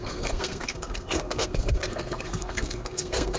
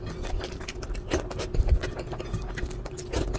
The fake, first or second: first